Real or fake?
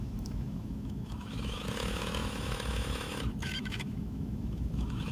fake